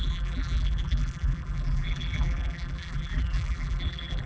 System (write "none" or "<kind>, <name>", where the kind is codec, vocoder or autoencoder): vocoder, BigVGAN v2